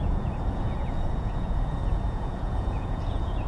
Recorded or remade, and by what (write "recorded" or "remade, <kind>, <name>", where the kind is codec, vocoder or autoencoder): remade, vocoder, Vocos